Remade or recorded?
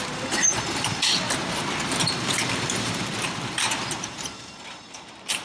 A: remade